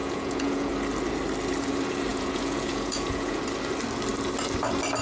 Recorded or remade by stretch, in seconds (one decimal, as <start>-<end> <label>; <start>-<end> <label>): 0.0-0.7 remade; 0.7-2.1 recorded; 2.1-3.4 remade; 3.4-5.0 recorded